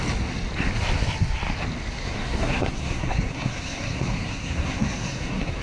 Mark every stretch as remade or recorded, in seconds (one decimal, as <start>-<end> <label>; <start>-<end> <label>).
0.0-2.0 recorded; 2.0-5.6 remade